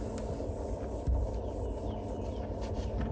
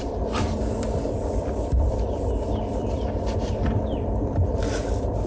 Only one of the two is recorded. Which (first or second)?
first